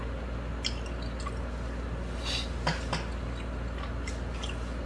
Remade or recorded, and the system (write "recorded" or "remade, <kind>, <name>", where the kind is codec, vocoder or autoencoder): recorded